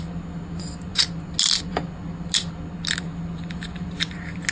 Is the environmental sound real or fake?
real